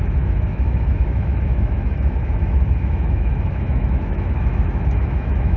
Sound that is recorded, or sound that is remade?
remade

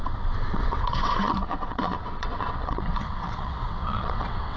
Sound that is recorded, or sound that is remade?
remade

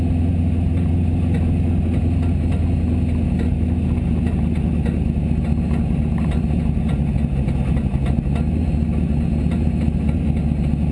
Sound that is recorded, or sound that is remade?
recorded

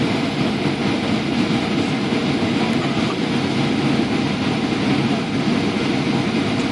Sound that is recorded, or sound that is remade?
recorded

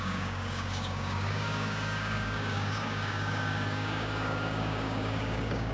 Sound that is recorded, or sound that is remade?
remade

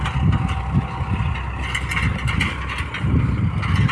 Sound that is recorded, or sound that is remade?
recorded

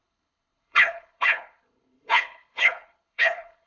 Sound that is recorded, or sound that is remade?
remade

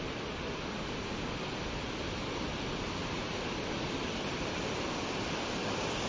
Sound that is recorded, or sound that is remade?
recorded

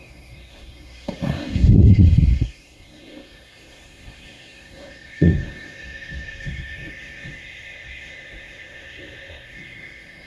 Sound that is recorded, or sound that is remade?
remade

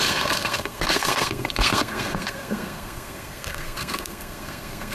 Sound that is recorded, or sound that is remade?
remade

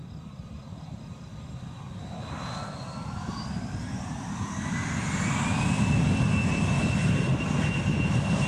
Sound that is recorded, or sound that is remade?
recorded